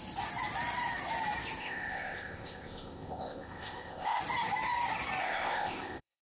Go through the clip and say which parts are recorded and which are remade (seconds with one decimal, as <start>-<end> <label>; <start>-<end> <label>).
0.0-1.6 recorded; 1.6-4.2 remade; 4.2-5.2 recorded; 5.2-6.2 remade